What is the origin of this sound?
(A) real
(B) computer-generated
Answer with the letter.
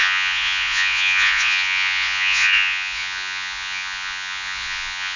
B